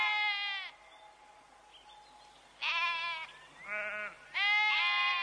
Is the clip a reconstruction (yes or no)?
no